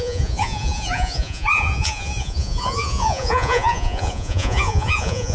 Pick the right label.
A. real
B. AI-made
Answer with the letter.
B